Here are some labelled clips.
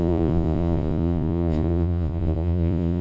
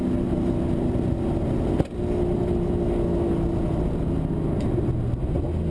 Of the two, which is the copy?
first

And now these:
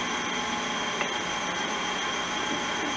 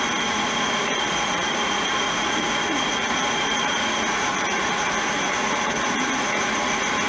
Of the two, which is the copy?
second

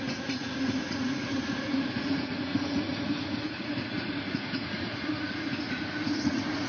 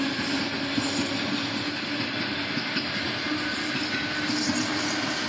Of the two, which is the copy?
first